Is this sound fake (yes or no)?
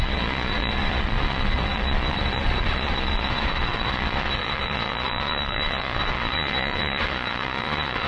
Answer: yes